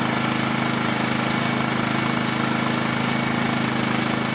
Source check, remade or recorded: recorded